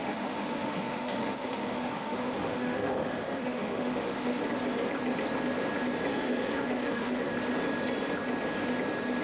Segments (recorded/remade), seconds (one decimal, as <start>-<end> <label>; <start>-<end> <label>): 0.0-4.4 remade; 4.4-6.1 recorded; 6.1-7.3 remade; 7.3-9.2 recorded